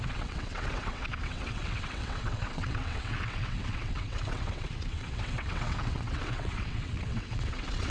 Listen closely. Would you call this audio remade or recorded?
remade